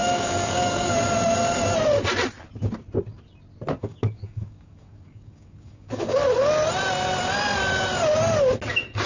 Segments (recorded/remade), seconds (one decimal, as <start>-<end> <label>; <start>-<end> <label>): 0.0-0.9 remade; 0.9-3.8 recorded; 3.8-6.2 remade; 6.2-9.1 recorded

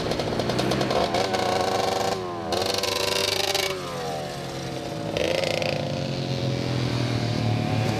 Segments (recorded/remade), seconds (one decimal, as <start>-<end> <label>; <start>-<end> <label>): 0.0-6.9 recorded; 6.9-7.4 remade; 7.4-8.0 recorded

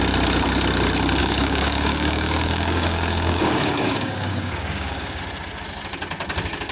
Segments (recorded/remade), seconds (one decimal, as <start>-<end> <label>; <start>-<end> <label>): 0.0-1.2 recorded; 1.2-5.2 remade; 5.2-6.7 recorded

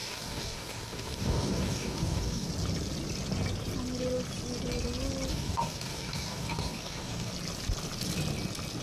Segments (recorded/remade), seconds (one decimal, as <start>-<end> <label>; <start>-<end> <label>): 0.0-2.5 remade; 2.5-5.3 recorded; 5.3-7.3 remade; 7.3-8.8 recorded

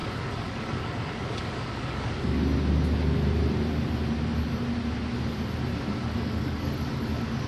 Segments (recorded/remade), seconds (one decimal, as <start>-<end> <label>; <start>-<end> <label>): 0.0-2.4 remade; 2.4-5.9 recorded; 5.9-7.5 remade